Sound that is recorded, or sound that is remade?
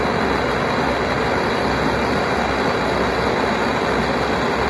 recorded